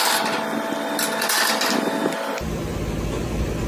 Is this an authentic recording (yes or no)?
yes